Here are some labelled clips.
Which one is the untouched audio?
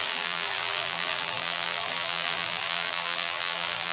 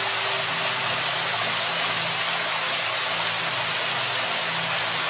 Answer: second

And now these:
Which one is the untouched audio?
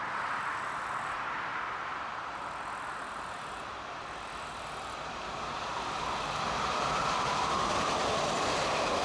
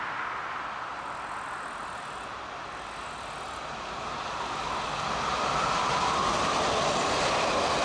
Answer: second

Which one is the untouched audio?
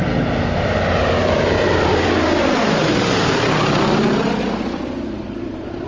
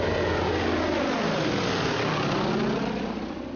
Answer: second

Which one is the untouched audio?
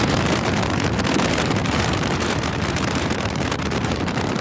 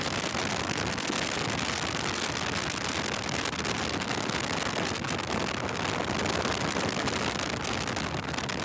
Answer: second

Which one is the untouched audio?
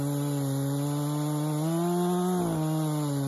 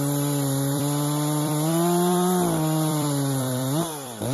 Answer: first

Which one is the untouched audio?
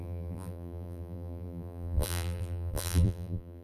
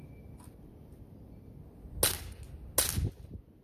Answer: second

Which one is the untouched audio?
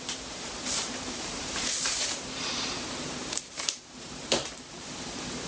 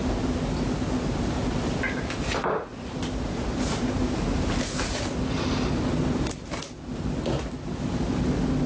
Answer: second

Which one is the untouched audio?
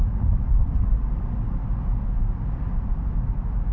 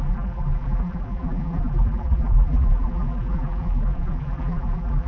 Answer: first